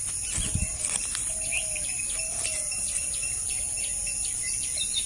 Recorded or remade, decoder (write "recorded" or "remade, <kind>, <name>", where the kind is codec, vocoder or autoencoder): recorded